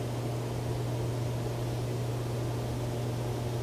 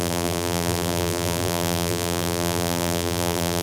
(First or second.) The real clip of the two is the first